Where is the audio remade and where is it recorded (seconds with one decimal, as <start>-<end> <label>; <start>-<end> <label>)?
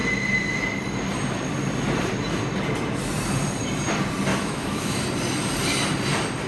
0.0-4.3 recorded; 4.3-5.0 remade; 5.0-6.5 recorded